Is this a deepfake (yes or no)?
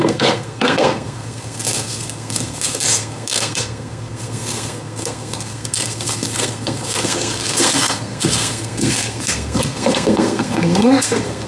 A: yes